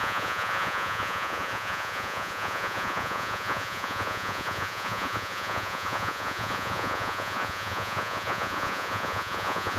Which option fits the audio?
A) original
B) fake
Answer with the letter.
B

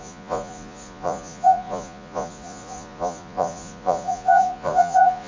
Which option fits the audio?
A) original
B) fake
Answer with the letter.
B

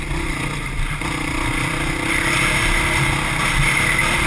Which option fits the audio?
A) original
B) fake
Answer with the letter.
A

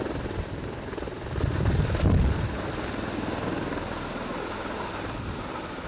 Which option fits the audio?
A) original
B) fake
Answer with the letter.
A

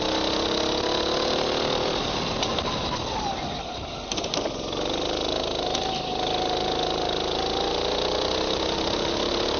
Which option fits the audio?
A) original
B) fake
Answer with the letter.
A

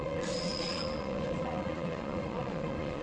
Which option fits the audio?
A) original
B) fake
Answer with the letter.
B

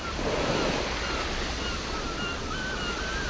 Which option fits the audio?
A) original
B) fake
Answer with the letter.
A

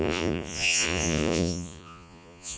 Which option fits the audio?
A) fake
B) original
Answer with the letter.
A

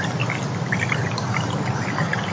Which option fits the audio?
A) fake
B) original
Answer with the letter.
B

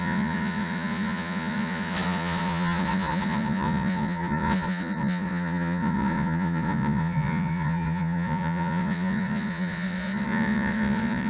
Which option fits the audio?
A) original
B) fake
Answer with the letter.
B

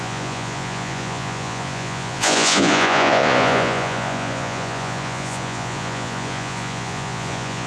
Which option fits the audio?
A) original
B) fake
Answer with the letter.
B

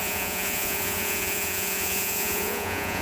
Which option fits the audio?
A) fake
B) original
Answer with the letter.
A